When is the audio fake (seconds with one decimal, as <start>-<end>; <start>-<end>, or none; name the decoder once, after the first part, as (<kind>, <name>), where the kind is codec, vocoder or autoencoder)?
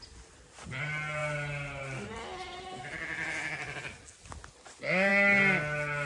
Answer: none